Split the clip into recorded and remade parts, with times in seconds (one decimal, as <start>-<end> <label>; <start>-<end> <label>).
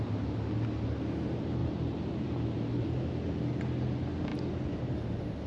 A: 0.0-1.6 recorded; 1.6-3.6 remade; 3.6-5.5 recorded